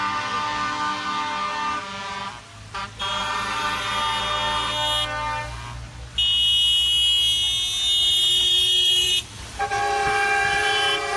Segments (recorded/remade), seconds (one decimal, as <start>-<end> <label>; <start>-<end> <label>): 0.0-3.2 recorded; 3.2-3.8 remade; 3.8-8.0 recorded; 8.0-11.2 remade